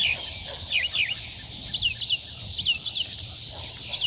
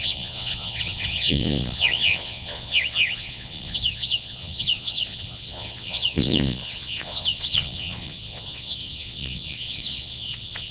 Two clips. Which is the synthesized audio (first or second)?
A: second